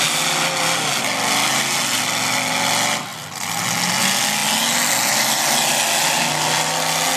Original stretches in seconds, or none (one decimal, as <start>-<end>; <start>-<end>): 0.0-7.2